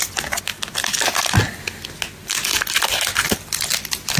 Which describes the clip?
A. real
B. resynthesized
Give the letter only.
A